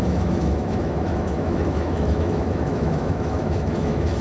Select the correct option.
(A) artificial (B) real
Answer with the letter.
A